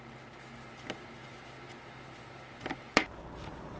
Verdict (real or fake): real